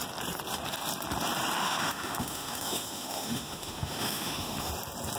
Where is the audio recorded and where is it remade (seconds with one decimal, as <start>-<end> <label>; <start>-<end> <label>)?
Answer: 0.0-1.6 recorded; 1.6-4.7 remade; 4.7-5.2 recorded